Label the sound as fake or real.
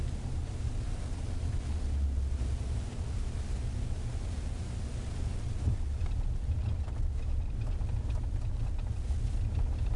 real